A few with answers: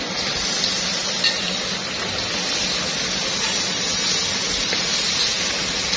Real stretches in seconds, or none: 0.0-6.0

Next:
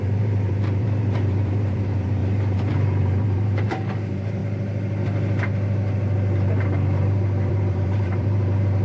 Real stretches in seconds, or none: 4.4-7.5

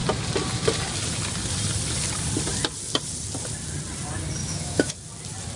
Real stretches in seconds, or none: 0.0-4.4; 4.9-5.6

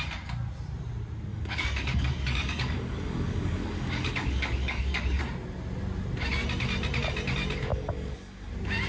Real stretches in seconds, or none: 0.0-1.3; 5.2-7.7; 8.5-8.9

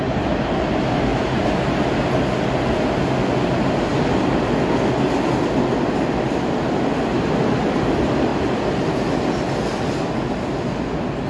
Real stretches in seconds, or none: 0.0-1.1; 1.8-11.3

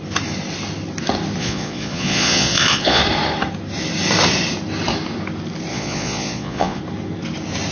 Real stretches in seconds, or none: 0.0-1.4; 3.0-5.7; 6.8-7.7